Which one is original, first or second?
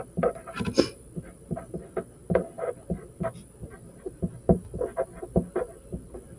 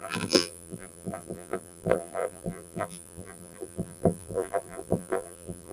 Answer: first